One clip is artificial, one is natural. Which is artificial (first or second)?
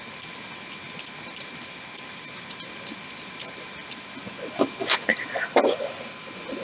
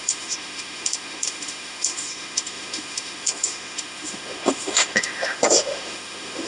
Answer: second